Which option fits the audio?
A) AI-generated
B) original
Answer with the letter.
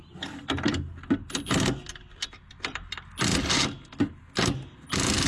B